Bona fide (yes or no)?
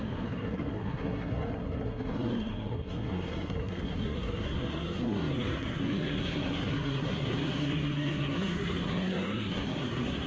no